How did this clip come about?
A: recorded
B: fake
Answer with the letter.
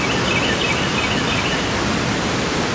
A